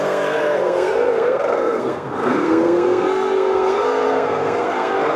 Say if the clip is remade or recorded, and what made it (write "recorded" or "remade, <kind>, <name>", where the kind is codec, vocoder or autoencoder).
remade, codec, SNAC